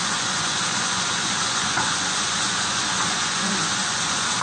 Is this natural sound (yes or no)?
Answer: no